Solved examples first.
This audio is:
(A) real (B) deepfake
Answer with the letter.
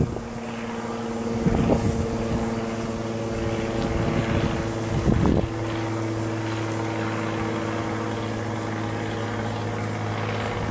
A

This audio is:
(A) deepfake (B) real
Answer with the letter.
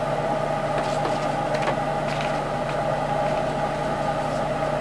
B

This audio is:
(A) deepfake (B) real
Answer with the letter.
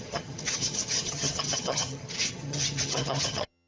A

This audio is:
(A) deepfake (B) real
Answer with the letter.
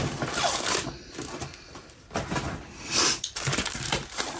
A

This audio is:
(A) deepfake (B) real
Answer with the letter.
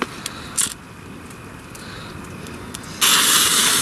B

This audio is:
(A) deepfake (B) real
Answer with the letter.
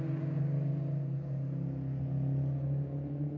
B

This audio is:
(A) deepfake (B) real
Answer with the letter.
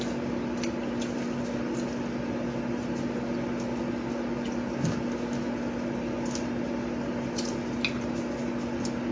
B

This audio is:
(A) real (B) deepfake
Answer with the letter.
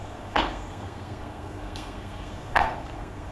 B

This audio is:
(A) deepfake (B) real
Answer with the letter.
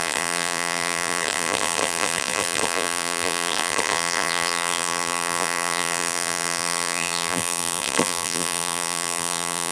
A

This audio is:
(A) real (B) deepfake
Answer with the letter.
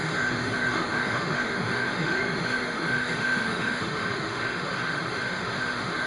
B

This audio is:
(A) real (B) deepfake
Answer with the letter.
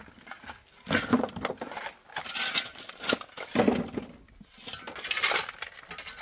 A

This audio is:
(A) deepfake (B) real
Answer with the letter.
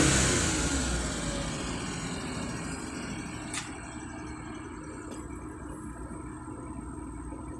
B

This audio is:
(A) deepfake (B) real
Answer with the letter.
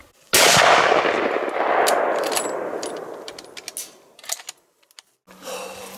B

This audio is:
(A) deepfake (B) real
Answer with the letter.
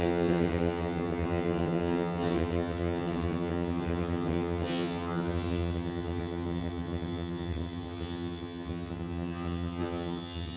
A